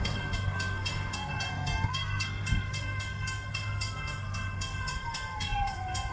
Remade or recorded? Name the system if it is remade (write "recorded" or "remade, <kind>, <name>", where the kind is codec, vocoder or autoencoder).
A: remade, codec, SNAC